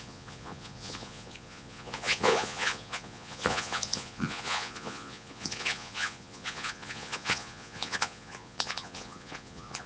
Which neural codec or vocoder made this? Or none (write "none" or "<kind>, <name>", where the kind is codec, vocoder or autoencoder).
vocoder, Vocos